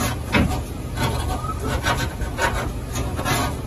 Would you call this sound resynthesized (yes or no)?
no